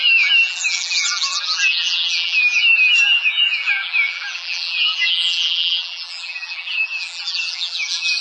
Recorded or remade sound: remade